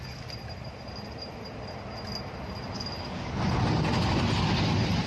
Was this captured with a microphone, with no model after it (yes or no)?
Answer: yes